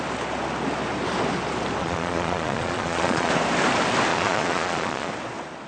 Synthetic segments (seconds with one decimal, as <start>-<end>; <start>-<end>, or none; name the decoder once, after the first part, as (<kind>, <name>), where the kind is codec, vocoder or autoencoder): 1.8-3.3 (vocoder, Vocos); 4.1-5.1